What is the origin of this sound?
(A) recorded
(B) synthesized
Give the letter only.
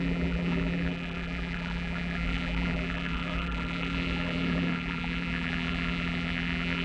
B